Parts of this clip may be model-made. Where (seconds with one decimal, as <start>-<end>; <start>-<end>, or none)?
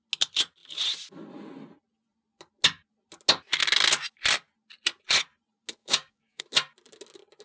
5.8-6.4